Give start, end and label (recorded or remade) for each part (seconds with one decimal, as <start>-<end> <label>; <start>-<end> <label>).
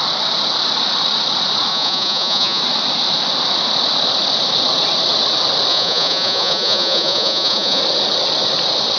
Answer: 0.0-1.7 recorded; 1.7-2.6 remade; 2.6-5.7 recorded; 5.7-7.8 remade; 7.8-9.0 recorded